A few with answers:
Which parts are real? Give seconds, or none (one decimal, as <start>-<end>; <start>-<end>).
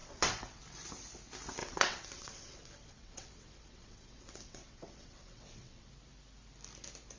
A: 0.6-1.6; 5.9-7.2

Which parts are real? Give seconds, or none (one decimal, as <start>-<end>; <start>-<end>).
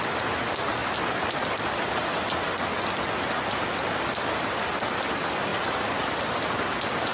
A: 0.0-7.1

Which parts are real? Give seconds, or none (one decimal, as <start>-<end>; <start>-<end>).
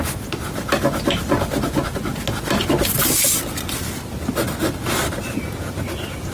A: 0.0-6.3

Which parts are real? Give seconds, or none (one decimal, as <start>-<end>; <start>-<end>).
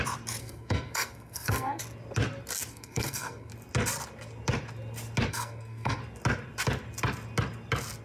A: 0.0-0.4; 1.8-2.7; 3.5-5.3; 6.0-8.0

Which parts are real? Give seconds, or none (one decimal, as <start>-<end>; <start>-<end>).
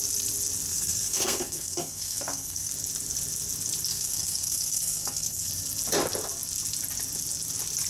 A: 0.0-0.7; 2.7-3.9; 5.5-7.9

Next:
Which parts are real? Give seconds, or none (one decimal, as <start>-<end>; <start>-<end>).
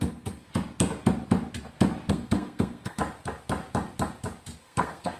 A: 0.5-2.1; 3.0-4.6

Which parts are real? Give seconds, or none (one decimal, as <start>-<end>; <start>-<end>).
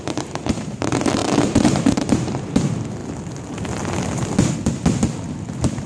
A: 3.0-5.2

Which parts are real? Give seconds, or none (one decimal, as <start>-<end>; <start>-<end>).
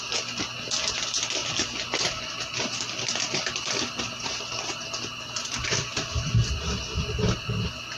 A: 0.0-8.0